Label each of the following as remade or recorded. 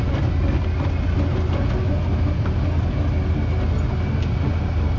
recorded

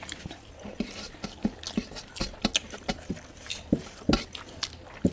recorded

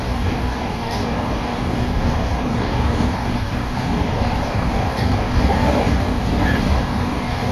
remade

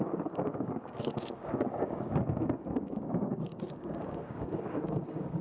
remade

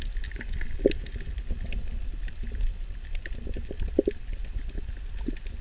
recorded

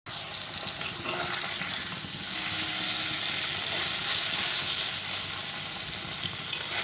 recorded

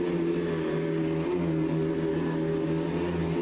recorded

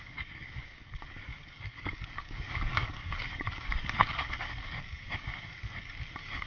remade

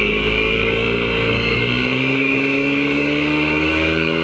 remade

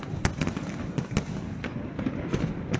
recorded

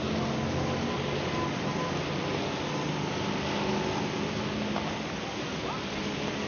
recorded